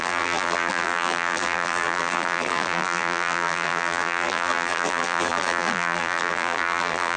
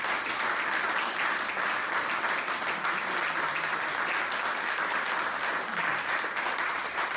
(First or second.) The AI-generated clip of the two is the first